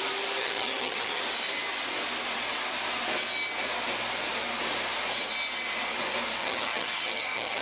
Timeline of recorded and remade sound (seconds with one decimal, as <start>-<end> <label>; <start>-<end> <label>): 0.0-0.4 recorded; 0.4-1.2 remade; 1.2-6.4 recorded; 6.4-7.6 remade